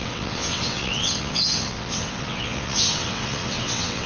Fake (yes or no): yes